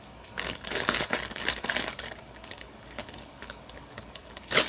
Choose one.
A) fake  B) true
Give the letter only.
A